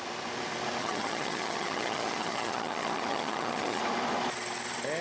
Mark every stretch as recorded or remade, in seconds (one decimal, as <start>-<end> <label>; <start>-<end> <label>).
0.0-0.8 recorded; 0.8-3.8 remade; 3.8-5.0 recorded